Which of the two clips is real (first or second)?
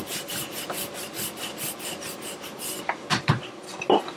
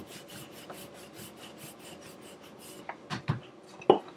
second